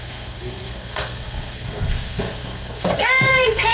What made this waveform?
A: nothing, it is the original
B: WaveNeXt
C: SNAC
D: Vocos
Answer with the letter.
C